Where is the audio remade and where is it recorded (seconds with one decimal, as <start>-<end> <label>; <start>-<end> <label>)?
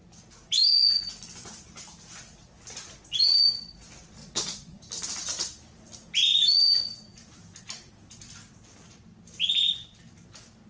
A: 0.0-4.2 recorded; 4.2-4.8 remade; 4.8-10.7 recorded